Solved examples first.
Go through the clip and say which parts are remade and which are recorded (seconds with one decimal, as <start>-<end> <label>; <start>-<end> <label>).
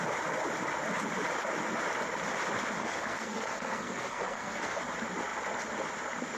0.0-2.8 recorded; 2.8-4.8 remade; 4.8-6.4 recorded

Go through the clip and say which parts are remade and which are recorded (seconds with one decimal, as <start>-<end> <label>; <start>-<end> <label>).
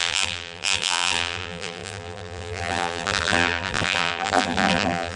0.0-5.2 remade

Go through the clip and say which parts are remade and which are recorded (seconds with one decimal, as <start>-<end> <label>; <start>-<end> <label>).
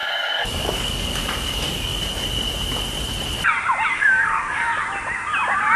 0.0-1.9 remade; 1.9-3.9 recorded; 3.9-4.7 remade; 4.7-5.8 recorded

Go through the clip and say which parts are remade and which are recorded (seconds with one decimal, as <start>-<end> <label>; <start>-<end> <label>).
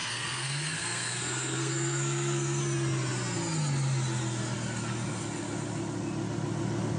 0.0-2.6 remade; 2.6-7.0 recorded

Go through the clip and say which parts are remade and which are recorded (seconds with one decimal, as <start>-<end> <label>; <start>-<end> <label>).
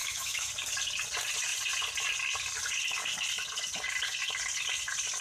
0.0-0.5 remade; 0.5-5.2 recorded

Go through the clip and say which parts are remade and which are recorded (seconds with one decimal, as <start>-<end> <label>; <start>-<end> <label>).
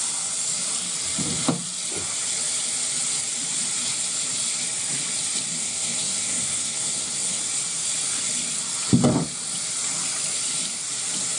0.0-5.6 recorded; 5.6-7.4 remade; 7.4-11.4 recorded